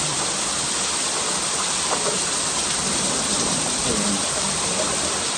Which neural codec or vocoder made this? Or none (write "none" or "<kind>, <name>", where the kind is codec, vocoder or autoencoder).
vocoder, BigVGAN v2